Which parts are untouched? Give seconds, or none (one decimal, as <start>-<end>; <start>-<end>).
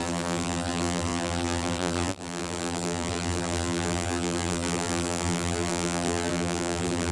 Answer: none